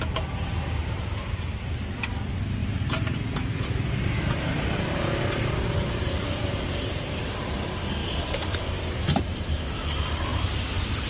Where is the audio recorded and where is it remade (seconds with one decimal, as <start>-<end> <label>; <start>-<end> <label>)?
0.0-0.8 recorded; 0.8-1.3 remade; 1.3-2.6 recorded; 2.6-7.3 remade; 7.3-8.0 recorded; 8.0-9.7 remade; 9.7-10.3 recorded; 10.3-11.1 remade